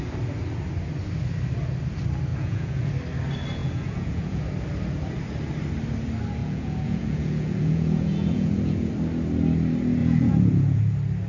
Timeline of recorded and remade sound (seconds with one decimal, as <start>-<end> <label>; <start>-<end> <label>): 0.0-2.3 recorded; 2.3-2.9 remade; 2.9-3.6 recorded; 3.6-4.4 remade; 4.4-6.4 recorded; 6.4-8.9 remade; 8.9-10.0 recorded; 10.0-10.8 remade; 10.8-11.3 recorded